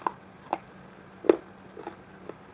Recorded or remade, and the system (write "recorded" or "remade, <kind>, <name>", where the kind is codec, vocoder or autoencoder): recorded